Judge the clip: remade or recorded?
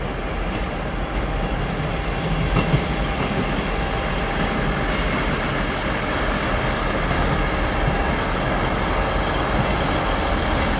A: recorded